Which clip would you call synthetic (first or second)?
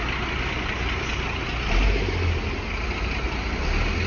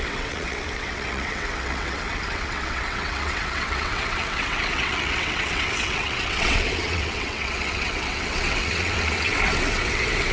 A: second